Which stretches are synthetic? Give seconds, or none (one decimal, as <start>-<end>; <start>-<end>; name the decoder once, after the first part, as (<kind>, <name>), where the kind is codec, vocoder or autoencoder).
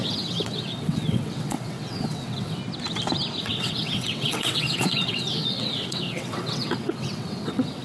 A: 0.0-2.6 (vocoder, WaveNeXt); 3.4-7.8